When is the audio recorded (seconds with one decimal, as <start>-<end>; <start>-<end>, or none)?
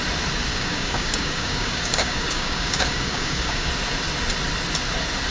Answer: 0.0-0.5; 3.7-5.3